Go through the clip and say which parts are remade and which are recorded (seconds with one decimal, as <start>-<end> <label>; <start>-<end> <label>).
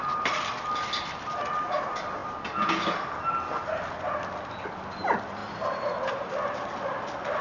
0.0-7.4 recorded